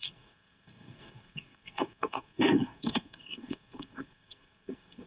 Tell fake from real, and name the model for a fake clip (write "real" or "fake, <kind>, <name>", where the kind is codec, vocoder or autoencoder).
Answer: fake, codec, SNAC